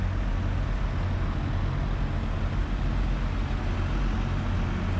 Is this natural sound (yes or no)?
yes